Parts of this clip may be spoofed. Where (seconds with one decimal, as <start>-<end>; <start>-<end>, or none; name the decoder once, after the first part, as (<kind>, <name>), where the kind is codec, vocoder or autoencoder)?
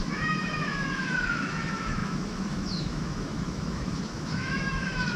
0.0-5.2 (autoencoder, DAC-VAE)